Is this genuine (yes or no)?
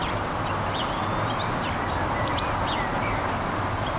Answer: yes